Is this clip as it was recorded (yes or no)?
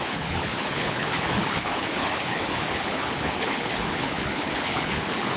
no